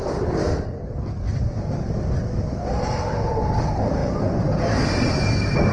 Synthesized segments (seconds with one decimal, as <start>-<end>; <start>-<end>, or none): none